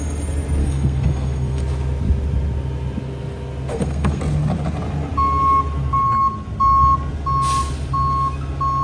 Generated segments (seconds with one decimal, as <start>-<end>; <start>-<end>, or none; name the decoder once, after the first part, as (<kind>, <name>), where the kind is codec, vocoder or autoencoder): 0.6-1.6 (codec, SNAC); 3.7-4.2